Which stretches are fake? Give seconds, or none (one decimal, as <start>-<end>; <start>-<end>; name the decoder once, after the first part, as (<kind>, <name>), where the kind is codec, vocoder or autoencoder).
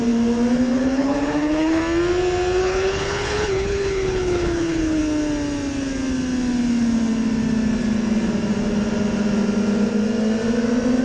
0.7-1.8 (codec, HILCodec); 2.6-5.0